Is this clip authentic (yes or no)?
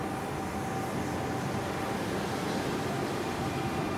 yes